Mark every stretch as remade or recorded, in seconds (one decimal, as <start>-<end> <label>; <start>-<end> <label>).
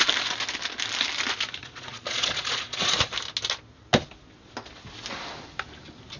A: 0.0-1.6 recorded; 1.6-2.9 remade; 2.9-6.2 recorded